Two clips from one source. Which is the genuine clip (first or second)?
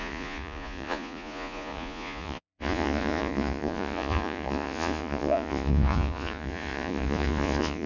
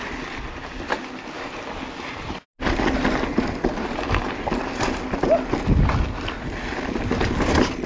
second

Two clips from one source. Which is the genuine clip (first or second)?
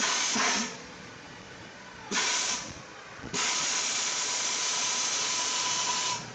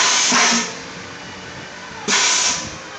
second